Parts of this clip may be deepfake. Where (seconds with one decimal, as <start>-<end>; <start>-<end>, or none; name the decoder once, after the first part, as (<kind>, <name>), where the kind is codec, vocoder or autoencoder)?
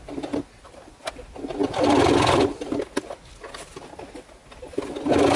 none